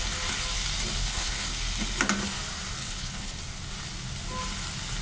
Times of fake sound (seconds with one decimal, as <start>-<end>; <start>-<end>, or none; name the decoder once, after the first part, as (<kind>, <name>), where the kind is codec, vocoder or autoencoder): 1.0-1.5 (codec, HILCodec); 2.8-3.4